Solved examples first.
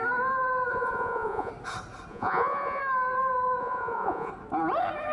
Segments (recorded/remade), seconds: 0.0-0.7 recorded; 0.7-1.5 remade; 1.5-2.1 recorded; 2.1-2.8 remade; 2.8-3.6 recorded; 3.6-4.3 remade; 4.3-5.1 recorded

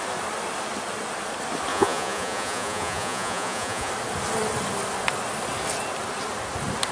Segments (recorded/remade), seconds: 0.0-1.7 recorded; 1.7-3.9 remade; 3.9-6.9 recorded

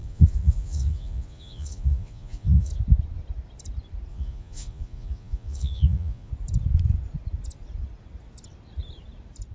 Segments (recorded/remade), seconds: 0.0-2.7 remade; 2.7-4.1 recorded; 4.1-6.3 remade; 6.3-9.5 recorded

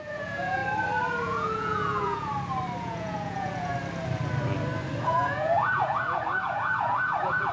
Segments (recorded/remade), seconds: 0.0-0.6 remade; 0.6-1.2 recorded; 1.2-2.3 remade; 2.3-2.8 recorded; 2.8-3.7 remade; 3.7-5.0 recorded; 5.0-7.5 remade

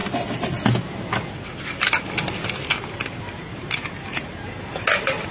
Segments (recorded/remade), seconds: 0.0-5.3 recorded